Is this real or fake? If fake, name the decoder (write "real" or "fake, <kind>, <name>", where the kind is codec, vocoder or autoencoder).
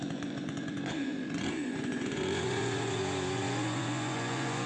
fake, vocoder, Vocos